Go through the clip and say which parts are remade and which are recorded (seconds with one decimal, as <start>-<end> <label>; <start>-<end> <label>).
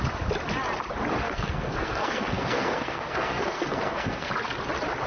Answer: 0.0-1.2 recorded; 1.2-4.3 remade; 4.3-5.1 recorded